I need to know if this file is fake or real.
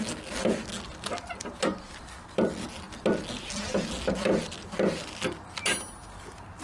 real